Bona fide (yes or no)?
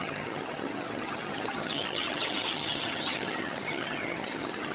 no